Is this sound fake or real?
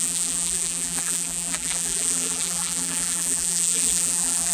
fake